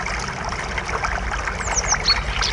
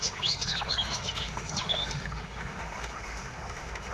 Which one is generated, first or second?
second